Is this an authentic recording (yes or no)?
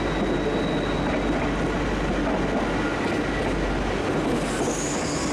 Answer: yes